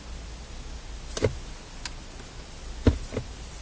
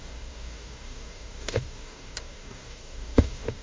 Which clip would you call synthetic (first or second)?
second